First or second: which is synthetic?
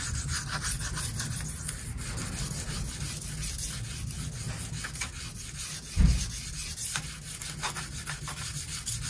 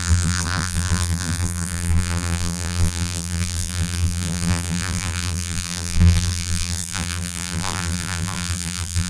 second